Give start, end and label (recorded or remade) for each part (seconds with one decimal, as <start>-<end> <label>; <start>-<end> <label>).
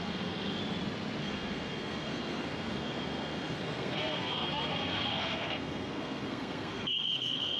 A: 0.0-0.6 remade; 0.6-1.2 recorded; 1.2-7.6 remade